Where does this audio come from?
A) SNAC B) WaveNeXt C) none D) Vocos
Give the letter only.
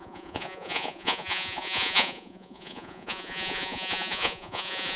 D